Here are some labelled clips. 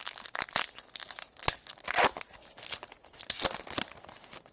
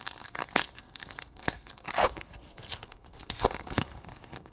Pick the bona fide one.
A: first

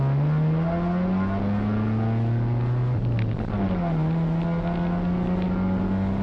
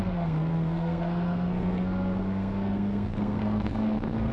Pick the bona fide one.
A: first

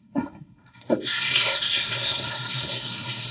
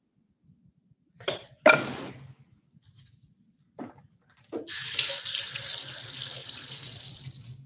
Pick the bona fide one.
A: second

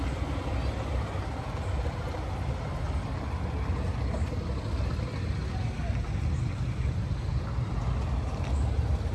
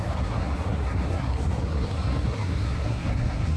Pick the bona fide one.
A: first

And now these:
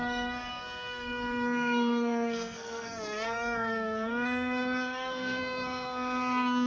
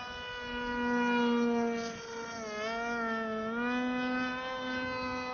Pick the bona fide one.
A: second